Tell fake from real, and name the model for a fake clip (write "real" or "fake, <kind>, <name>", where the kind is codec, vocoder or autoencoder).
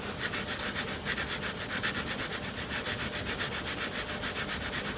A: real